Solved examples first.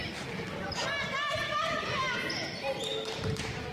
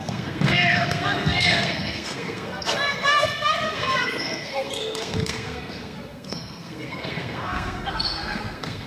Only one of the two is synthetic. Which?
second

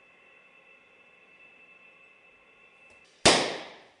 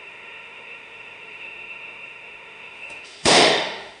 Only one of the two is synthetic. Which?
second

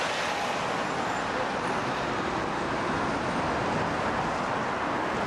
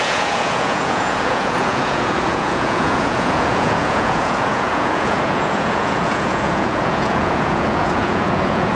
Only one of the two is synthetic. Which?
second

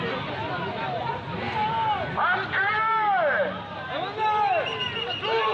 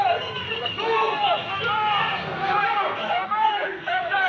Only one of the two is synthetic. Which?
second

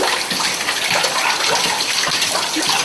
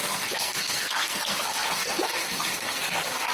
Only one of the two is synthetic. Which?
second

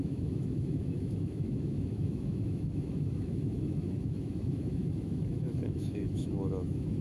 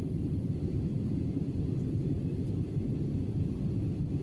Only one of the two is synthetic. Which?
first